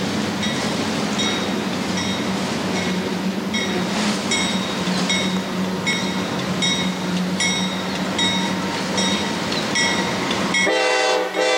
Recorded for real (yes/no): yes